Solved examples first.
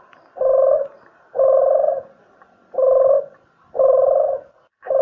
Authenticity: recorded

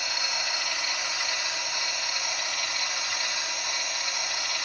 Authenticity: recorded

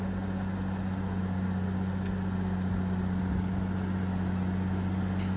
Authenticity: recorded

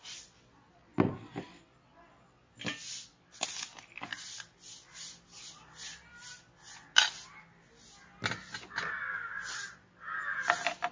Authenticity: recorded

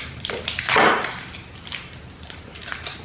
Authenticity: remade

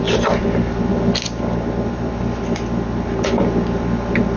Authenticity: recorded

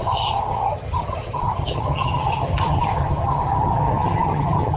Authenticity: remade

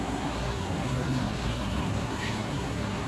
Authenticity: remade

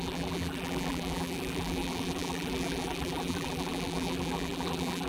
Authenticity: remade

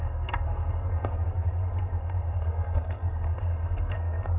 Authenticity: remade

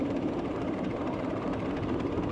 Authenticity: remade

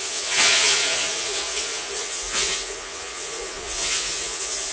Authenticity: remade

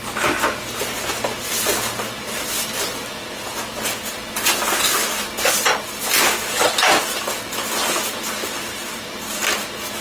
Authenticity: recorded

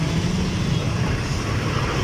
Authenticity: recorded